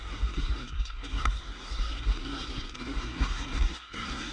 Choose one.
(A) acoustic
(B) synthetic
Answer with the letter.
B